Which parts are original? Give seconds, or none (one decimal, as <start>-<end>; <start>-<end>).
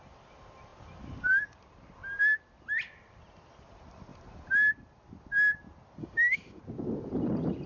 0.0-6.0; 6.6-7.7